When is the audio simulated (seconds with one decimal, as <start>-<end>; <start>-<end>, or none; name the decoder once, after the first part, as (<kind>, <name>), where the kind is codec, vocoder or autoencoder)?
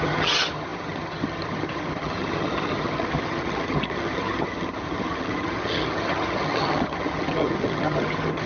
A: 0.0-8.5 (vocoder, HiFi-GAN)